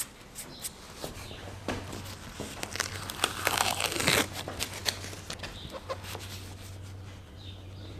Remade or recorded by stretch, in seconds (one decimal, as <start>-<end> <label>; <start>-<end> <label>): 0.0-8.0 recorded